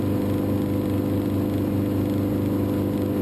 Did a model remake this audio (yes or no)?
no